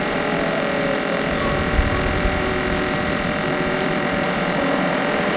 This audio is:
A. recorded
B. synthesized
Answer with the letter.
B